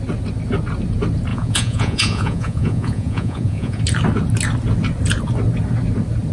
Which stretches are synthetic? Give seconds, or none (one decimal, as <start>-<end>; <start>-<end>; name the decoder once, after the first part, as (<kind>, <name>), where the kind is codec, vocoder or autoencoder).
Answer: 1.3-3.8 (vocoder, Vocos)